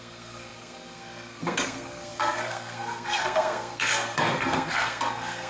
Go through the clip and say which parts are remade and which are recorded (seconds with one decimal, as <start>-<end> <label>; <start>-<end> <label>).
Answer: 0.0-5.5 remade